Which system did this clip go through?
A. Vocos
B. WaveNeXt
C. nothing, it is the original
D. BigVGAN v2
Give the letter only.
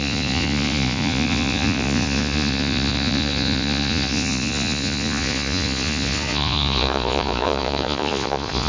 A